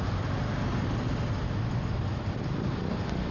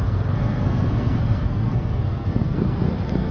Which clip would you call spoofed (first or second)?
second